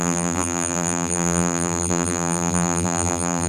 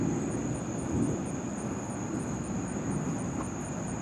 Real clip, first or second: second